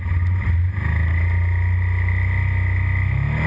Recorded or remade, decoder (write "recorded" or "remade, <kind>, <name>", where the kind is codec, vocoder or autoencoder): recorded